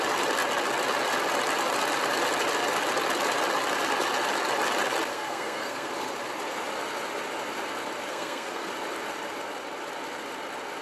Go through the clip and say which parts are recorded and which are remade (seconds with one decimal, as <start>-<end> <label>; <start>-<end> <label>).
0.0-5.1 recorded; 5.1-5.9 remade; 5.9-8.1 recorded; 8.1-8.7 remade; 8.7-10.8 recorded